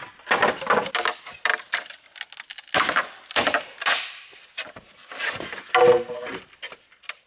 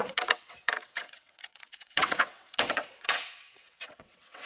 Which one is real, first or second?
first